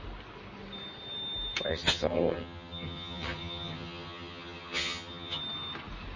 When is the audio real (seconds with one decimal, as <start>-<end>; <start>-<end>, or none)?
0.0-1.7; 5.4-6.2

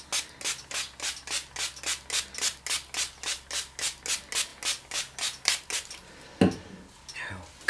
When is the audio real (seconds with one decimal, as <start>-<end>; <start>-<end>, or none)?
0.0-7.7

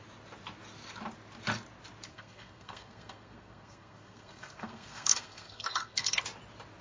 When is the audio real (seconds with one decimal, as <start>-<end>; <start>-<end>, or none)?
0.0-2.1; 6.2-6.8

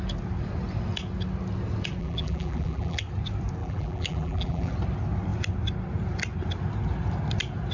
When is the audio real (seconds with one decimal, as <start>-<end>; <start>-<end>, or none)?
0.0-2.0; 3.0-3.6; 4.7-7.7

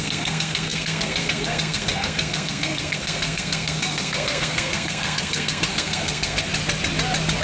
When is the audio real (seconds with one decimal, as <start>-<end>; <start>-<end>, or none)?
6.5-7.4

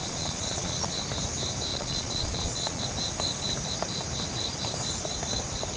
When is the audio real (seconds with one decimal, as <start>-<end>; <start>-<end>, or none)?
1.0-1.7; 2.8-5.8

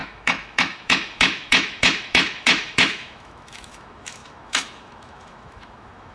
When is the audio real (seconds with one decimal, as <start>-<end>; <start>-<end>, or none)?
none